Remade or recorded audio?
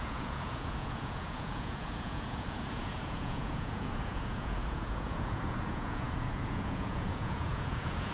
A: remade